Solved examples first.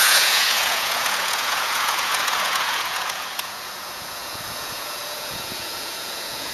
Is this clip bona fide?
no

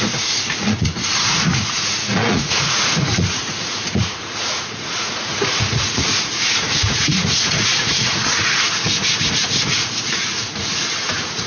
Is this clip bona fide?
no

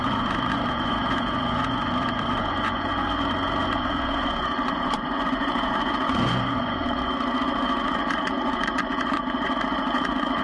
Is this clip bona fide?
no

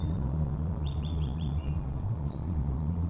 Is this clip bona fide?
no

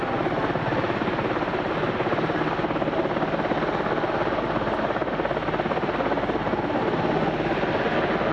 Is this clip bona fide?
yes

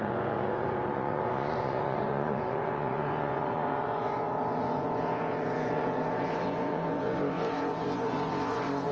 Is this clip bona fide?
no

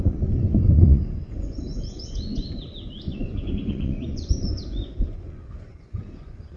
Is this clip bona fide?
no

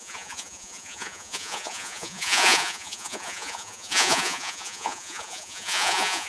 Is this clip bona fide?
no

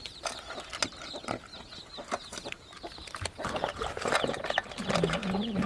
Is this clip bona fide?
yes